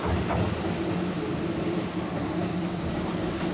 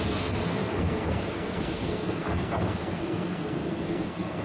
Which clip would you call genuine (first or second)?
first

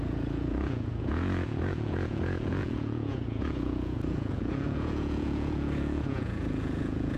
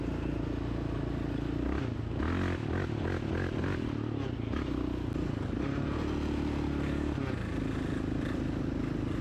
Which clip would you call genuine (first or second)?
second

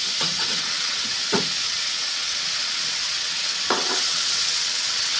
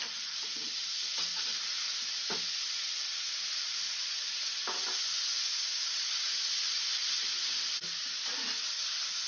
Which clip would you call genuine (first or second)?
second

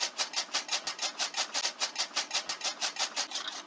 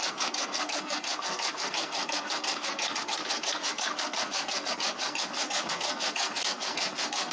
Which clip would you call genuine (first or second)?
first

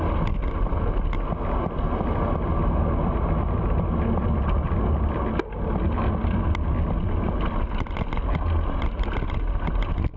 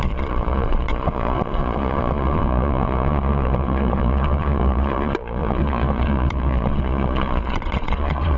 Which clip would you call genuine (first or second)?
first